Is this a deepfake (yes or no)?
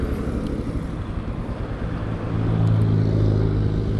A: no